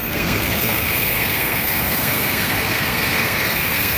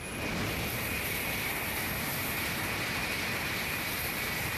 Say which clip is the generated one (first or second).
first